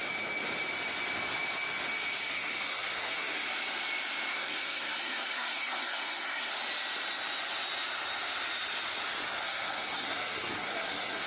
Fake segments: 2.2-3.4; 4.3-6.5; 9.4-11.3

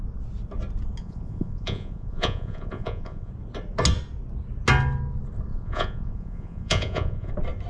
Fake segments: 1.0-3.3; 5.5-7.3

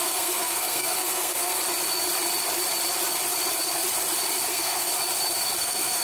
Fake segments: 0.0-1.6; 4.5-4.9; 5.6-6.0

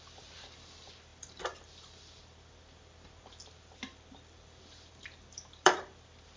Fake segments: 0.0-6.4

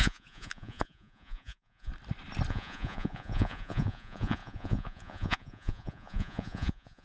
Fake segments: 0.0-1.9; 2.5-7.0